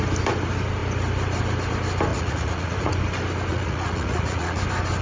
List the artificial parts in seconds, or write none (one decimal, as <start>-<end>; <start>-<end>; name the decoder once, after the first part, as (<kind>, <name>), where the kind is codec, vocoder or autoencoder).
2.1-2.9 (vocoder, Vocos); 3.5-4.6

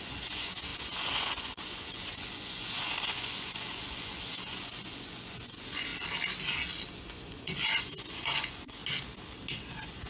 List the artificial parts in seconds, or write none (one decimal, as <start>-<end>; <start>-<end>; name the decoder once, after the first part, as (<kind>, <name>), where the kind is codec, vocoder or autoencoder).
0.0-5.9 (vocoder, Vocos); 6.9-8.8; 9.5-10.1